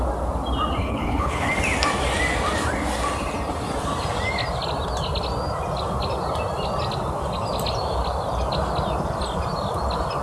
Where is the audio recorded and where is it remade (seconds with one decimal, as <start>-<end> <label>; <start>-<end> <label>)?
0.0-0.8 recorded; 0.8-1.5 remade; 1.5-10.2 recorded